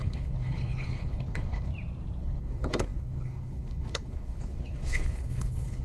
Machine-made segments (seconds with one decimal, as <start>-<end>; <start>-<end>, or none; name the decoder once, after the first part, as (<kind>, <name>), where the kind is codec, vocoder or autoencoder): 0.0-1.7 (codec, HILCodec); 2.2-5.8